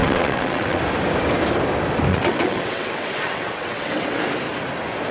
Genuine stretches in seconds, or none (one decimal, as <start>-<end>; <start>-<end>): 0.8-2.1; 4.2-5.1